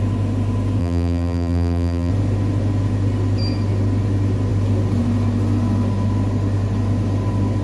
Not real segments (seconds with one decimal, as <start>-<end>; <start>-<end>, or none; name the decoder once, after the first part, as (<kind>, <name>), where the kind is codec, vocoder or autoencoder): 0.8-2.1 (vocoder, BigVGAN v2)